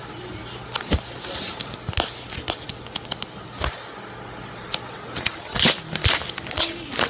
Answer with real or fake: real